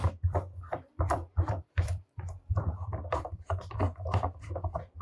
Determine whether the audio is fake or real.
fake